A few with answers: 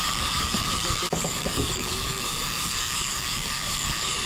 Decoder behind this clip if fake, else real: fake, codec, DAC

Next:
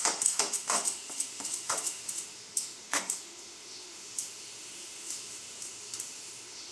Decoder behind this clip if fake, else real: fake, autoencoder, DAC-VAE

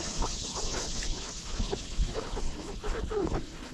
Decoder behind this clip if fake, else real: fake, codec, HILCodec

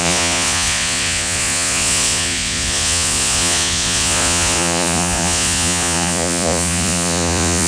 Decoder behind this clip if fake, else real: fake, vocoder, Vocos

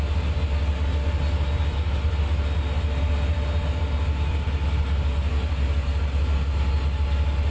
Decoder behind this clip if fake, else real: real